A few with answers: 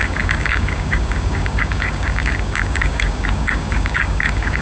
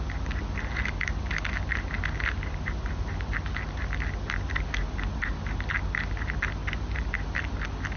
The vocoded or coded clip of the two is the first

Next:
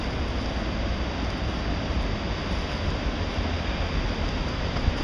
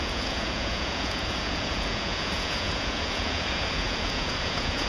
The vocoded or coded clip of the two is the second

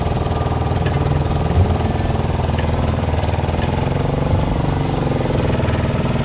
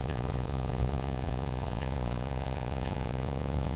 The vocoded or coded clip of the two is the second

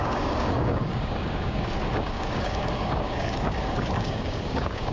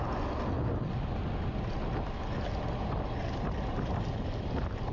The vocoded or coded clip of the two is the first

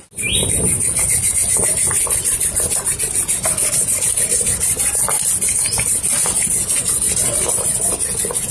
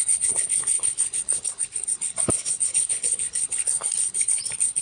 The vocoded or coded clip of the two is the second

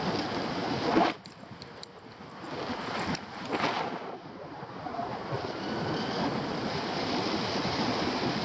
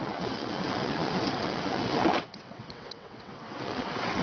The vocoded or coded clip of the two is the second